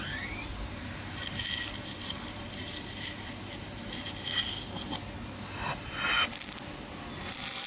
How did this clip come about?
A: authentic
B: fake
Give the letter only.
A